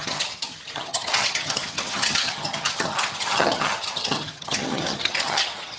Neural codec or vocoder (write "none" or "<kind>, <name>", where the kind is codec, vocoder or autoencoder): vocoder, HiFi-GAN